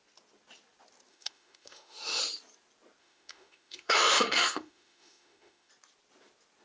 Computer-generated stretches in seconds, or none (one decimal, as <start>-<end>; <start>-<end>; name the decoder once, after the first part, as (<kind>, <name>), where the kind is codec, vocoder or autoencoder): 1.1-2.2 (autoencoder, DAC-VAE); 3.0-5.7